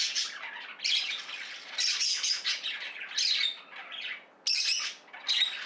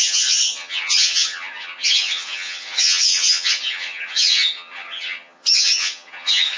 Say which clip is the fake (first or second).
second